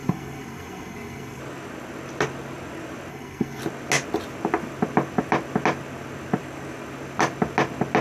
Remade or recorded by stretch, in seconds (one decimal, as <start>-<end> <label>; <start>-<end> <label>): 0.0-1.4 remade; 1.4-3.1 recorded; 3.1-3.6 remade; 3.6-8.0 recorded